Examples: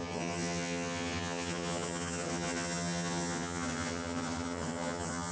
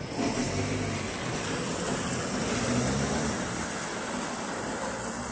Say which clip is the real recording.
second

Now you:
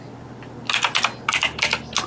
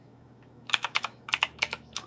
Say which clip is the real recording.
first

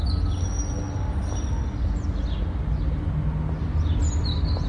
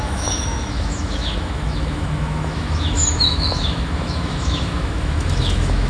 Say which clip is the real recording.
first